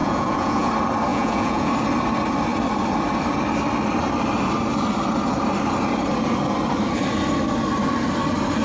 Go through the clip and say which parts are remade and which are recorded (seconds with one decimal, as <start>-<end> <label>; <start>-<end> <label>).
0.0-0.7 remade; 0.7-1.1 recorded; 1.1-1.7 remade; 1.7-8.6 recorded